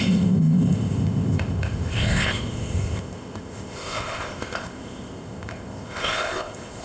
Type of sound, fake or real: fake